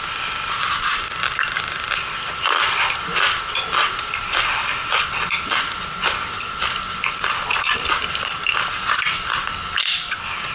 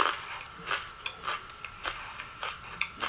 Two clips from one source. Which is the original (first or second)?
second